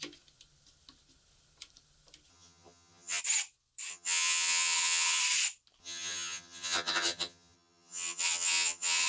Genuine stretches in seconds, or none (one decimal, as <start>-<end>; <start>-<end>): 0.0-2.3; 3.2-3.9; 5.2-5.8

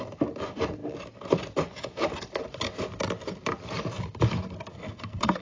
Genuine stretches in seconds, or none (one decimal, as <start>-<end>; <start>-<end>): 0.0-4.7

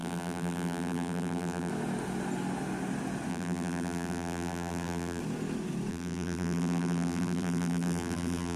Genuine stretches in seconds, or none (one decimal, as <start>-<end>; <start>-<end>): 1.7-3.3; 5.2-5.9

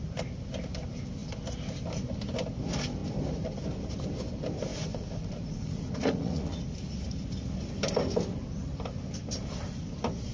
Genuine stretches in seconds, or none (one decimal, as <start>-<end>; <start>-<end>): 0.0-4.7; 6.6-10.3